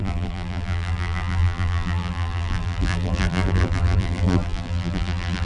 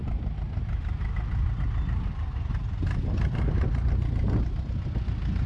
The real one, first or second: second